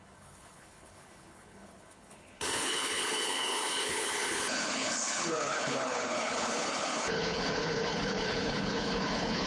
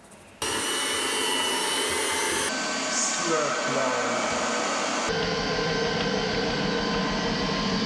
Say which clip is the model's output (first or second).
first